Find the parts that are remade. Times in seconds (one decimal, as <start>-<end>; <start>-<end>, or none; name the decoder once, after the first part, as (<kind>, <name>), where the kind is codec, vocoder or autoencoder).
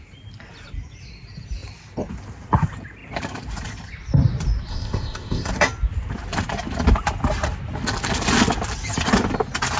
4.7-5.5 (codec, ZipCodec)